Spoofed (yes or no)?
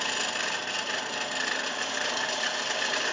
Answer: no